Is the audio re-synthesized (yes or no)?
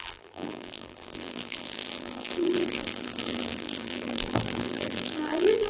yes